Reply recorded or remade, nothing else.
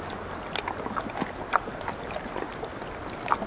recorded